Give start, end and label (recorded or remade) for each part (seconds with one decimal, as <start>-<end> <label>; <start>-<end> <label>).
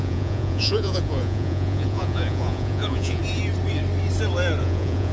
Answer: 0.0-3.2 remade; 3.2-4.6 recorded; 4.6-5.1 remade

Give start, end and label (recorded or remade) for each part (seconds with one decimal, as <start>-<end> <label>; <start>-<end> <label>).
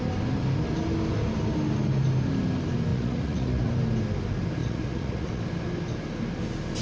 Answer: 0.0-2.9 recorded; 2.9-3.7 remade; 3.7-4.6 recorded; 4.6-5.4 remade; 5.4-6.8 recorded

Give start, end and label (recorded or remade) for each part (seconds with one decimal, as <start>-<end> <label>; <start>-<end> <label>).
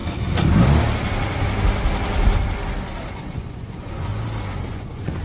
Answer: 0.0-3.1 recorded; 3.1-4.1 remade; 4.1-4.7 recorded; 4.7-5.2 remade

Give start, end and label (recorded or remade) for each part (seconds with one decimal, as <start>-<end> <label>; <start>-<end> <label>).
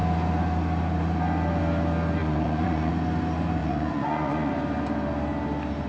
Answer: 0.0-2.2 recorded; 2.2-2.9 remade; 2.9-3.6 recorded; 3.6-4.5 remade; 4.5-5.9 recorded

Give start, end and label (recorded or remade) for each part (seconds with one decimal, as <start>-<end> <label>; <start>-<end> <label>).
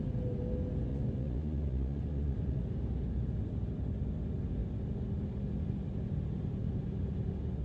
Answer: 0.0-0.9 recorded; 0.9-2.6 remade; 2.6-7.6 recorded